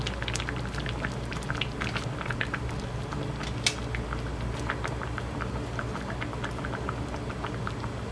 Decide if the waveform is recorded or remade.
recorded